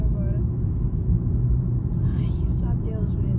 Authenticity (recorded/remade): recorded